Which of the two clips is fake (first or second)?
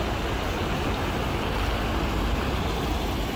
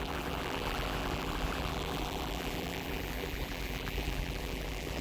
second